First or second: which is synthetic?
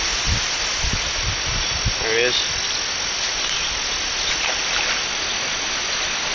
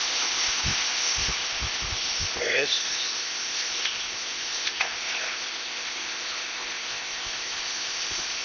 second